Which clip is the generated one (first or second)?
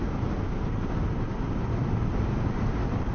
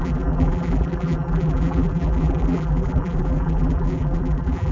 second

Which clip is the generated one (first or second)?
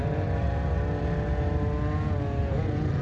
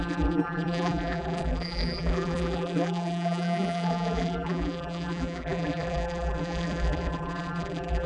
second